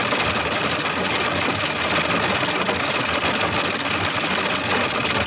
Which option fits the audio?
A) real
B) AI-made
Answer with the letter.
A